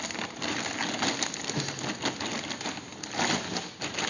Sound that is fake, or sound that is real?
real